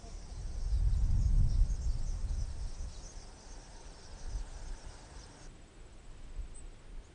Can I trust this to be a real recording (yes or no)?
yes